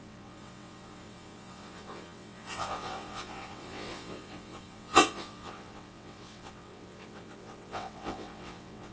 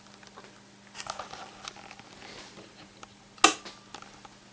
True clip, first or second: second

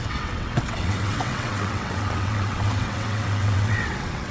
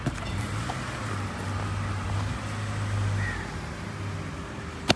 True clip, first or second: second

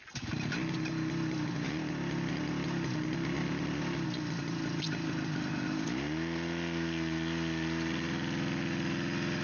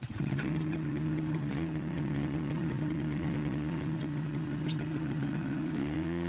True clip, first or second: first